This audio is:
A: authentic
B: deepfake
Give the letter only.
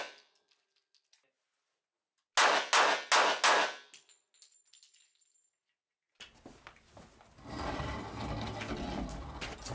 A